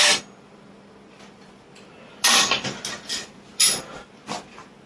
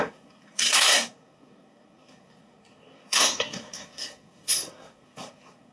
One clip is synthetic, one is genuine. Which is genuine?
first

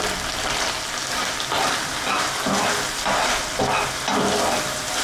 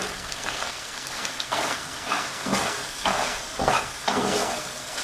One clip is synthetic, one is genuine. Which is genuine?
first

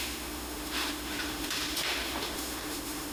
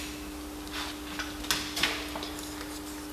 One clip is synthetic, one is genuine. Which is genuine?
second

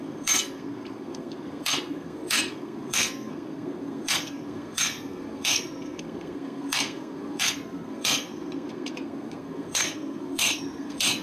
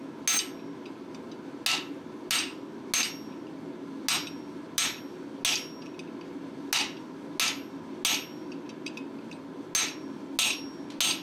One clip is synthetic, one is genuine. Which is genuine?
second